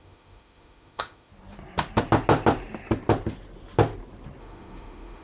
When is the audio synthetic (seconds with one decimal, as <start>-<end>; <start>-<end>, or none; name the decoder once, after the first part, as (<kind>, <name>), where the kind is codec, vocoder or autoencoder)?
0.0-1.3 (autoencoder, DAC-VAE); 4.4-5.2